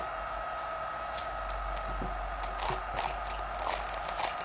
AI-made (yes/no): no